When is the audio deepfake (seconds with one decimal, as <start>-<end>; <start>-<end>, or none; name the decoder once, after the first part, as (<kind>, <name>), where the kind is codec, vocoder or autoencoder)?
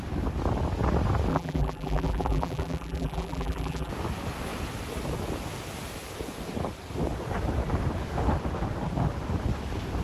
1.3-3.9 (vocoder, BigVGAN v2)